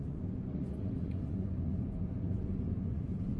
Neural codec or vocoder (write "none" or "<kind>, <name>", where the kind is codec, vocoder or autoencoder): vocoder, Vocos